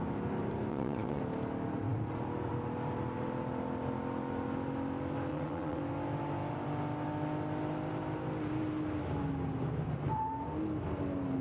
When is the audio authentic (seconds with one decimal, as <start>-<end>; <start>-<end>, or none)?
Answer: 0.0-0.7; 1.2-5.3; 5.8-11.4